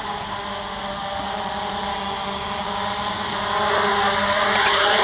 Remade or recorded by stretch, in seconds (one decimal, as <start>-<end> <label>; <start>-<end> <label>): 0.0-1.9 recorded; 1.9-2.6 remade; 2.6-5.0 recorded